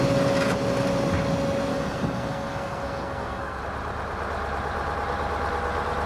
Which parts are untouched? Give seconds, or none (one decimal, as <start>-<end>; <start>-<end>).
0.0-1.7; 3.6-6.1